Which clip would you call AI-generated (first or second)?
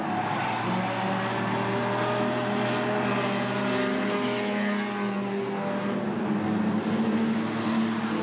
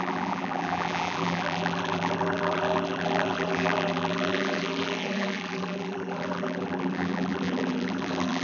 second